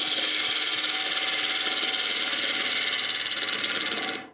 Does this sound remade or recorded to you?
recorded